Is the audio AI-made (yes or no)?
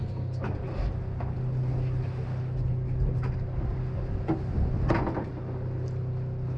no